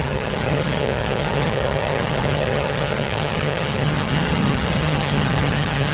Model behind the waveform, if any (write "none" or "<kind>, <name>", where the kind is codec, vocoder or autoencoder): vocoder, HiFi-GAN